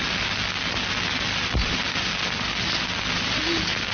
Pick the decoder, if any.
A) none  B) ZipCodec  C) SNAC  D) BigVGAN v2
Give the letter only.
A